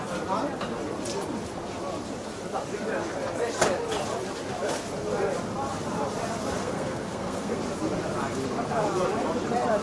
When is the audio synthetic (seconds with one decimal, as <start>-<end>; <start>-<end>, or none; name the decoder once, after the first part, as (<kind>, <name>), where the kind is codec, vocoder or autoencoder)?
6.6-7.6 (codec, SNAC)